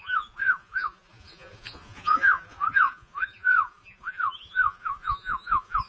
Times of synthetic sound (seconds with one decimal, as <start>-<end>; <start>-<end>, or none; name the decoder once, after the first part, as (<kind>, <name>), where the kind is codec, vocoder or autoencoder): 0.0-5.9 (vocoder, Vocos)